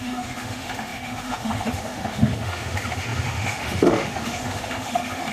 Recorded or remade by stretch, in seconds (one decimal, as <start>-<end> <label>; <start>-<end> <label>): 0.0-5.3 remade